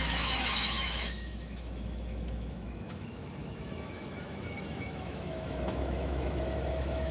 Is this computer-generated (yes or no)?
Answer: yes